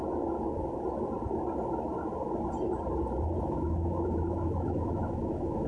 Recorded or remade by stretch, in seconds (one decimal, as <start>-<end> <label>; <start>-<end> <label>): 0.0-3.4 recorded; 3.4-5.7 remade